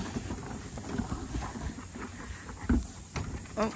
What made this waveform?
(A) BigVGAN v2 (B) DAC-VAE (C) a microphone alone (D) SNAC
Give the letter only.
C